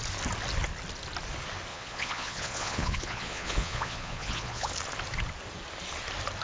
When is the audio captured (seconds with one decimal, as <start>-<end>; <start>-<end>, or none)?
0.0-1.7; 4.7-6.4